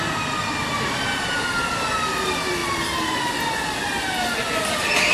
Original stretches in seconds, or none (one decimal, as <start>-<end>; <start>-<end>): 0.0-5.1

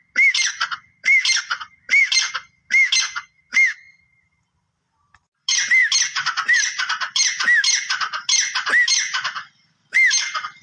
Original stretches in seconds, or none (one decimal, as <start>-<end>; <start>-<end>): 0.0-1.0; 2.3-5.8; 7.3-10.6

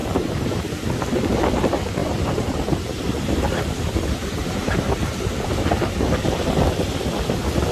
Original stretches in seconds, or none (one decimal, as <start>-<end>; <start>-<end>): 0.6-2.0; 2.7-4.4; 6.4-7.7

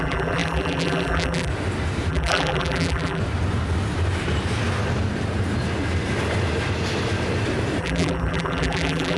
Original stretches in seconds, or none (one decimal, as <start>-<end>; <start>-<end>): 1.5-2.1; 3.2-7.8